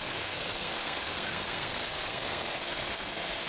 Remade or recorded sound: remade